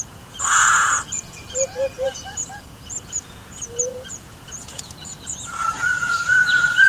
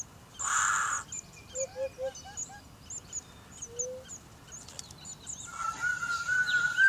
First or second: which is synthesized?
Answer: first